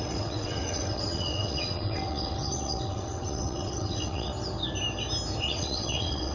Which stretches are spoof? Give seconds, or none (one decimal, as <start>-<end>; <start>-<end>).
0.0-4.3; 5.4-6.3